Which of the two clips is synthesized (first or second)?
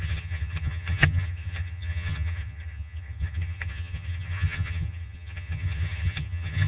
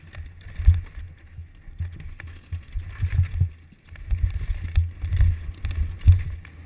first